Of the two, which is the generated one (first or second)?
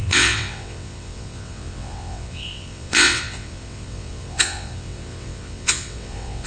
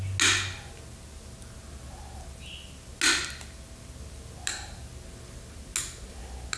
first